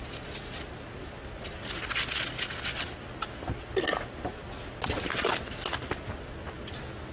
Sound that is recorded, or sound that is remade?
recorded